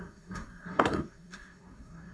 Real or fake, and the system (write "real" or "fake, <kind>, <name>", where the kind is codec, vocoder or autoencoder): fake, codec, SNAC